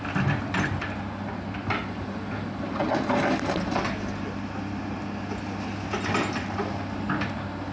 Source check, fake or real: real